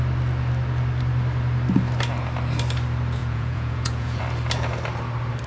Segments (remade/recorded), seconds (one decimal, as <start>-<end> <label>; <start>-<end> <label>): 0.0-3.2 recorded; 3.2-4.2 remade; 4.2-5.5 recorded